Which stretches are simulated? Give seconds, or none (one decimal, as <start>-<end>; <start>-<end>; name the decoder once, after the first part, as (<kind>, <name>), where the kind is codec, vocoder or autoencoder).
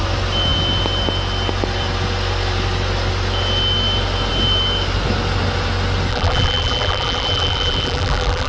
6.1-8.5 (vocoder, BigVGAN v2)